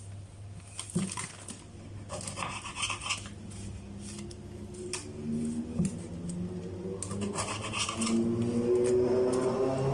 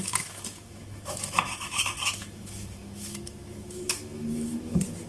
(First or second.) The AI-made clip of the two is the second